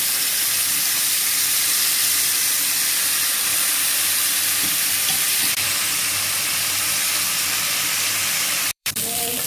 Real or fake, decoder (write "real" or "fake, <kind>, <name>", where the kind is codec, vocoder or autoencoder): fake, vocoder, BigVGAN v2